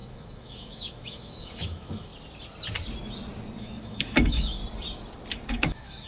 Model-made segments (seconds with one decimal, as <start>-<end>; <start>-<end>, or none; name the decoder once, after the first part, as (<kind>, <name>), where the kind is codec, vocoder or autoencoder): 0.0-2.1 (autoencoder, DAC-VAE); 3.6-4.6; 5.5-6.1